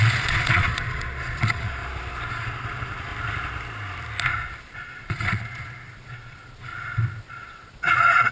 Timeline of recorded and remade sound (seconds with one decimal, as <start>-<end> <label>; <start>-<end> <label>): 0.0-1.8 remade; 1.8-2.3 recorded; 2.3-3.1 remade; 3.1-4.6 recorded; 4.6-6.7 remade; 6.7-7.3 recorded; 7.3-8.3 remade